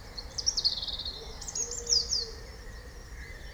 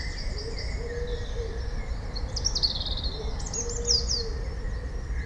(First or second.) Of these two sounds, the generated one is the first